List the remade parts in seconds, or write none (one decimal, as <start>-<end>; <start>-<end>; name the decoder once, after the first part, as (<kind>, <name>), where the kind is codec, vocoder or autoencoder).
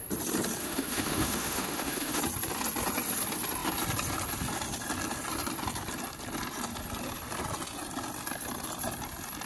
0.6-2.2 (autoencoder, DAC-VAE)